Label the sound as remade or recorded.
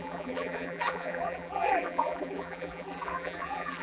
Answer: remade